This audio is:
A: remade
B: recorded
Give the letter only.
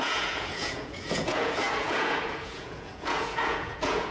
A